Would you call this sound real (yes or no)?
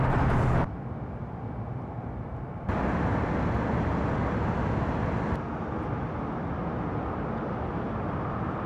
no